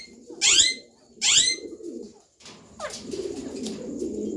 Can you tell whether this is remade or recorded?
recorded